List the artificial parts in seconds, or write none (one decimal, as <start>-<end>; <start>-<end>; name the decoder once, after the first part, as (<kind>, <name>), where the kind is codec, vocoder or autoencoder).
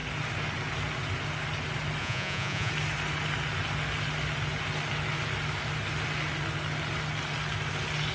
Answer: 2.0-2.7 (vocoder, Vocos)